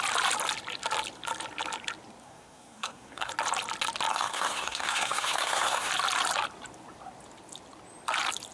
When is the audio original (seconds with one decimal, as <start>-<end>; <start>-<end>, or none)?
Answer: 0.0-2.2; 3.3-4.1; 5.9-8.5